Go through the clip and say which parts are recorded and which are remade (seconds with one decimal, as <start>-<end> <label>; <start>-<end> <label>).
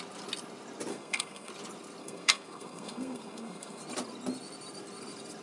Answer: 0.0-0.9 recorded; 0.9-1.5 remade; 1.5-2.0 recorded; 2.0-3.8 remade; 3.8-5.4 recorded